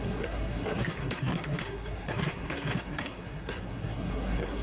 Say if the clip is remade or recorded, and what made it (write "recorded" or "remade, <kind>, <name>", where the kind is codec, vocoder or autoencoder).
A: remade, codec, SNAC